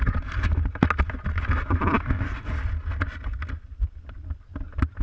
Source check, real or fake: real